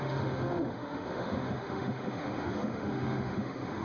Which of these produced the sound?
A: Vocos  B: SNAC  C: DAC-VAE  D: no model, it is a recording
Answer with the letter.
C